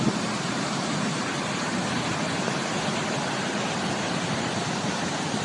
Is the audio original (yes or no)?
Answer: no